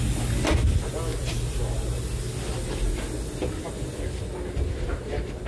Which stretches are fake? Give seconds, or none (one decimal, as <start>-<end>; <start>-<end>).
none